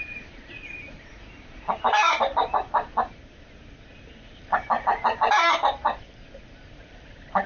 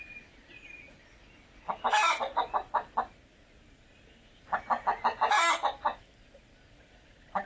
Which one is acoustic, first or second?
second